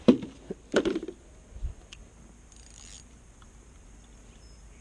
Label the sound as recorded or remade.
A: remade